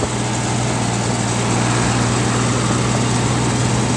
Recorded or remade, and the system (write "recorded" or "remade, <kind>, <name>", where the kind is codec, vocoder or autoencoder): recorded